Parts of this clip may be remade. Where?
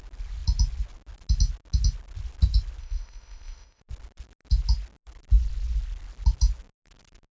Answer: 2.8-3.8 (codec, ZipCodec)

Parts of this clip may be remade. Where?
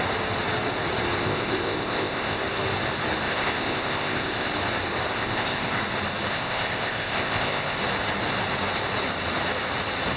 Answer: 1.2-2.4 (codec, ZipCodec); 3.2-4.5; 5.1-5.8; 6.3-7.8